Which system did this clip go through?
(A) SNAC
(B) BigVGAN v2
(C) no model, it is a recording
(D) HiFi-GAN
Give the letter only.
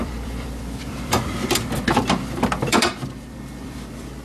B